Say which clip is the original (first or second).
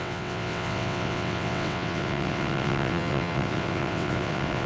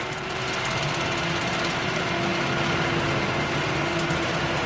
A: second